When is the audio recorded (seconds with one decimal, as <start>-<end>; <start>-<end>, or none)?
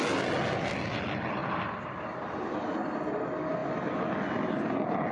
0.0-5.1